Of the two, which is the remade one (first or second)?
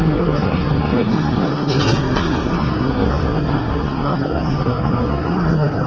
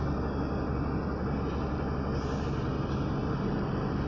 first